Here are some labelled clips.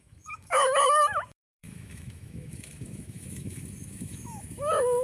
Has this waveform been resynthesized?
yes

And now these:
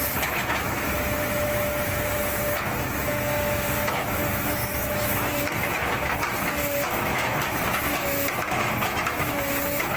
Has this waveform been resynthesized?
yes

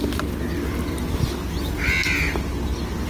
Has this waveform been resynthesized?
no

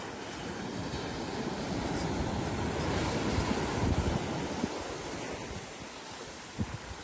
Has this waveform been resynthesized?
no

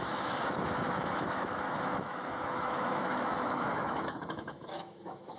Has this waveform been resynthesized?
yes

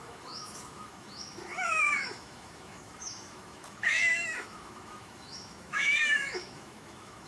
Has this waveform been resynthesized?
yes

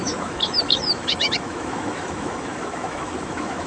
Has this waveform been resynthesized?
yes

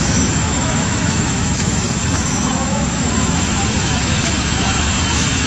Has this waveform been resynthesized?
yes